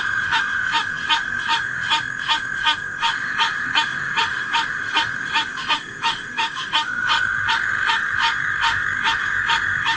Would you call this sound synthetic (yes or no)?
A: yes